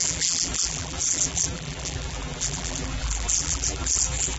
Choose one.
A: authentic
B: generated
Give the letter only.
B